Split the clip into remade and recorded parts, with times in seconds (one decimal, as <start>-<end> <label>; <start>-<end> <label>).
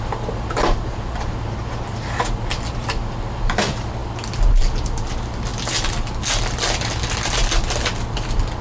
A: 0.0-8.6 recorded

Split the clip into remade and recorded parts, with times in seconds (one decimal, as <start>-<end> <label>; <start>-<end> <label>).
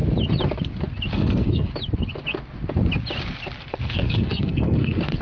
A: 0.0-1.1 recorded; 1.1-1.7 remade; 1.7-3.6 recorded; 3.6-5.2 remade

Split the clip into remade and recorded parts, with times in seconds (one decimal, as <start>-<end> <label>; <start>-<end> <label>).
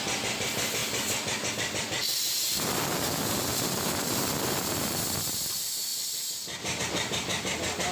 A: 0.0-0.8 remade; 0.8-1.5 recorded; 1.5-7.9 remade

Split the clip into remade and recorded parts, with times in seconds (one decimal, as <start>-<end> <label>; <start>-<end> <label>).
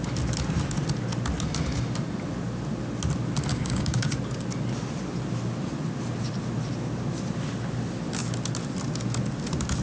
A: 0.0-3.5 recorded; 3.5-4.1 remade; 4.1-9.8 recorded